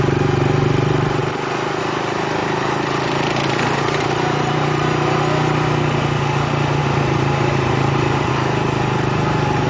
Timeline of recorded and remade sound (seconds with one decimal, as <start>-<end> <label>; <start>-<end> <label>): 0.0-2.4 recorded; 2.4-5.2 remade; 5.2-6.8 recorded; 6.8-8.3 remade; 8.3-9.7 recorded